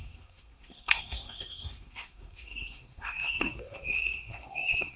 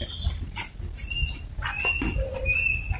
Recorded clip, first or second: second